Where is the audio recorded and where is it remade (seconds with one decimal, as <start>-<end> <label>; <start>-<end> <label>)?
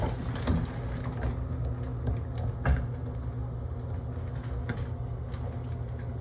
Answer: 0.0-6.2 recorded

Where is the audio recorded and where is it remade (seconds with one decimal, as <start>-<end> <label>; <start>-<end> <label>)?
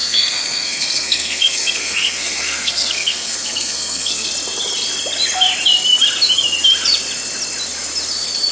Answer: 0.0-4.3 remade; 4.3-8.5 recorded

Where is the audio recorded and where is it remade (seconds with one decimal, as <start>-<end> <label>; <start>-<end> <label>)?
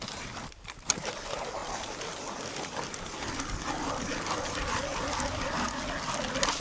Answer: 0.0-6.6 recorded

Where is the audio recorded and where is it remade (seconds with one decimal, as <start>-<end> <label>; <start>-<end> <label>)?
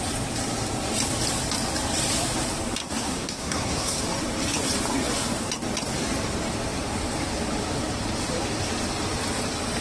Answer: 0.0-2.8 recorded; 2.8-4.0 remade; 4.0-9.8 recorded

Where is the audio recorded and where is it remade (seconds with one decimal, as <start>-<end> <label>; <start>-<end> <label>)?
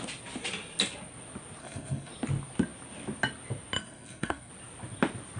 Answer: 0.0-1.6 recorded; 1.6-2.1 remade; 2.1-3.8 recorded; 3.8-4.5 remade; 4.5-5.4 recorded